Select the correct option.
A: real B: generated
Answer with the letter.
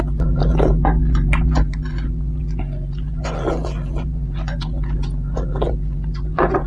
B